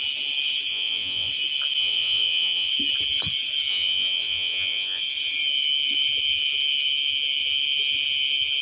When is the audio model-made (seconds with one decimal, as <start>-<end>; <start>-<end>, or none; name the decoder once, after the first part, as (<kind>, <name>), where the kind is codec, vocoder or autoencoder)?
0.7-1.3 (vocoder, Vocos); 1.8-2.7; 3.7-5.0